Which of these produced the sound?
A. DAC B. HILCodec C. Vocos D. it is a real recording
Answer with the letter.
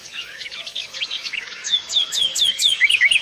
A